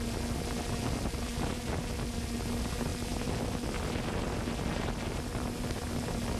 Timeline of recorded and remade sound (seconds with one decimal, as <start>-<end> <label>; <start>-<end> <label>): 0.0-6.4 recorded